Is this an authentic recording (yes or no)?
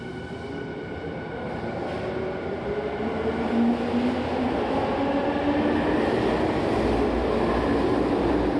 yes